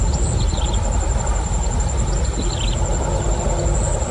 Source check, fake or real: real